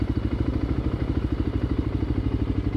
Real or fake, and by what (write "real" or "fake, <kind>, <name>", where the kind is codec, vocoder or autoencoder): real